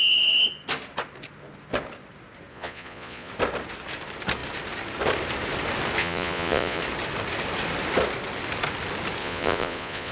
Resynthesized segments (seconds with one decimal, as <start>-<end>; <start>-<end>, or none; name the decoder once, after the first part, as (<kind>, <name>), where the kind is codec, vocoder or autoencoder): 2.5-3.3 (vocoder, Vocos); 6.0-6.8; 9.2-10.1